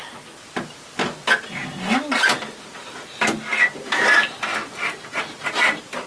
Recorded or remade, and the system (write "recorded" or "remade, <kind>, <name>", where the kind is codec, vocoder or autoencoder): recorded